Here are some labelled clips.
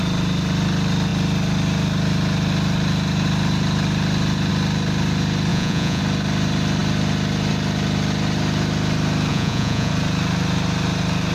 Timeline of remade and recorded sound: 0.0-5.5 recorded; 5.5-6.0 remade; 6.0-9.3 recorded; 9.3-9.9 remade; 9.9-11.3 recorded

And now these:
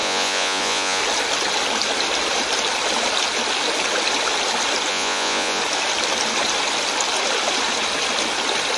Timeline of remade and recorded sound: 0.0-1.0 remade; 1.0-4.9 recorded; 4.9-5.6 remade; 5.6-8.8 recorded

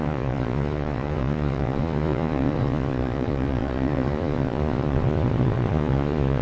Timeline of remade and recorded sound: 0.0-6.4 remade

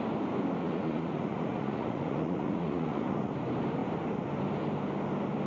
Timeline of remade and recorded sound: 0.0-0.6 recorded; 0.6-3.3 remade; 3.3-5.5 recorded